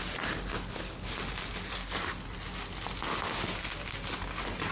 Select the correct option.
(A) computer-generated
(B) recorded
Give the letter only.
B